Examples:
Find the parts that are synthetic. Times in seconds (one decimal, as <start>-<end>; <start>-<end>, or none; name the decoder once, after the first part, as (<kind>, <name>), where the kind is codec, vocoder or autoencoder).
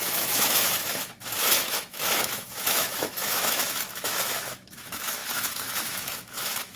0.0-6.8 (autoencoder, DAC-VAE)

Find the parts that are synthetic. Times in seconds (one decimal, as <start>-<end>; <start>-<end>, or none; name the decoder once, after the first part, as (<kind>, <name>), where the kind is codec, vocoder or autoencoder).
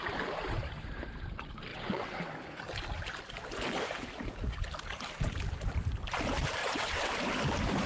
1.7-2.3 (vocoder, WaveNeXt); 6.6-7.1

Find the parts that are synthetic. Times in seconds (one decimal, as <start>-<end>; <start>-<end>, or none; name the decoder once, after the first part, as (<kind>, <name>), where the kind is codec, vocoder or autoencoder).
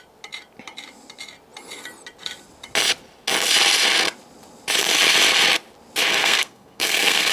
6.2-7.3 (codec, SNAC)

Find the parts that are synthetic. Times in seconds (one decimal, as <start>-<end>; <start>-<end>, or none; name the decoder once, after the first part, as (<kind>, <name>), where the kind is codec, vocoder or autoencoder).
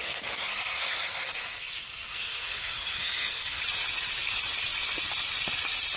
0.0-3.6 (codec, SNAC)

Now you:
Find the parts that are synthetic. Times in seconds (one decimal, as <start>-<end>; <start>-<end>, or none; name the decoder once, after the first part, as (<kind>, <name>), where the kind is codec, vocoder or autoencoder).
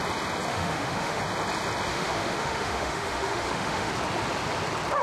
0.5-1.2 (autoencoder, DAC-VAE); 1.9-3.9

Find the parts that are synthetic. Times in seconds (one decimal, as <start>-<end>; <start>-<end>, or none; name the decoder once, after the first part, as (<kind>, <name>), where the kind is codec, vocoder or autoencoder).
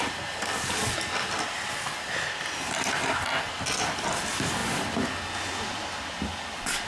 none